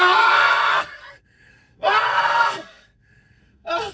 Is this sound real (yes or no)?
no